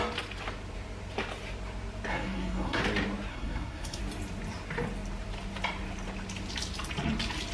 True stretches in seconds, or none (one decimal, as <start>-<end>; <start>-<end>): 0.0-2.1; 2.8-3.3; 4.0-7.5